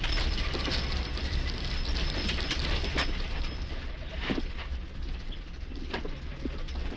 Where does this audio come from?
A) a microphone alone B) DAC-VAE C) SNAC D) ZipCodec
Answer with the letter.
A